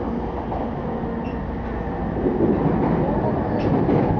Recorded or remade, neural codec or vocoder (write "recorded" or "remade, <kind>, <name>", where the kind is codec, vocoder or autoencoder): recorded